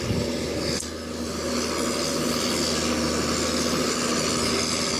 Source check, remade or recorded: recorded